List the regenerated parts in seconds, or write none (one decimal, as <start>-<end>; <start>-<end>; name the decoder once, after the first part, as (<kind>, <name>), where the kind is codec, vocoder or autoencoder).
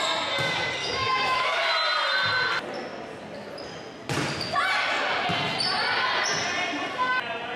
0.8-1.6 (autoencoder, DAC-VAE)